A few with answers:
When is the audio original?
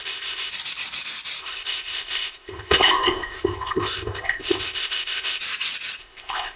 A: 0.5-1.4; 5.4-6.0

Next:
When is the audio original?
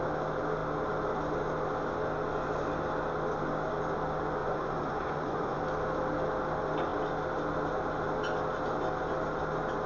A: 0.0-4.4; 5.6-9.9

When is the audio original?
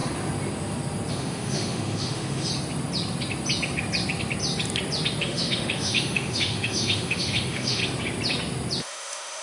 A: 0.0-1.1; 2.5-5.2; 7.8-8.8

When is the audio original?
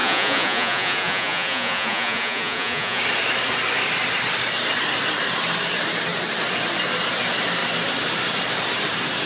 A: 3.0-9.3